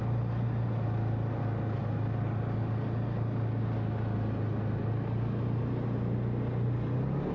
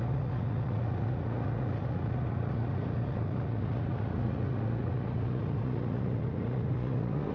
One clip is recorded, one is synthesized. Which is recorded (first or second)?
first